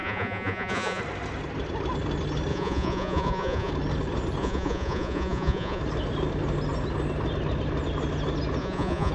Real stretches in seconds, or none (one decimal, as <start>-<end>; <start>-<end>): 1.0-2.5; 3.7-4.4; 5.8-8.6